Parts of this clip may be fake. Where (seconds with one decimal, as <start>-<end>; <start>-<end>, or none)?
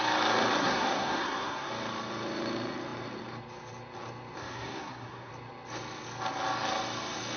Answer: 0.6-1.7; 4.4-5.3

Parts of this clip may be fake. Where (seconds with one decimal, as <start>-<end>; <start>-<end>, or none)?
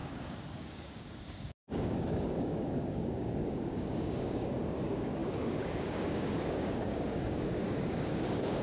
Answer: 0.0-8.6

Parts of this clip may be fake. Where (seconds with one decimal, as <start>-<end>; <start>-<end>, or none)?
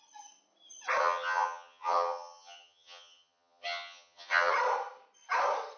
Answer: 1.0-4.5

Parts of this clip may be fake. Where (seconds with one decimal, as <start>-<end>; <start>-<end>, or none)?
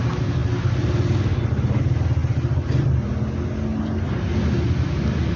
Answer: none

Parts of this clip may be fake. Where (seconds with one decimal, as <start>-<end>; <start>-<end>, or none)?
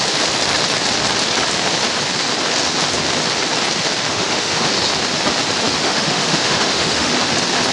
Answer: 4.1-4.7; 5.8-7.1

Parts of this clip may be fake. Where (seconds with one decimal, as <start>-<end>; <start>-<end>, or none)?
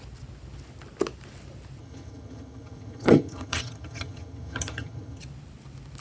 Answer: 1.8-5.2